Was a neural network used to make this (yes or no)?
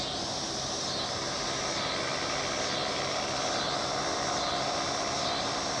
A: no